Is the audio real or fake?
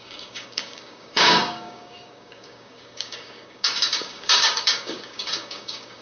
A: fake